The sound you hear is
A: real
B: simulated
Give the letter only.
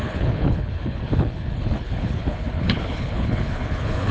B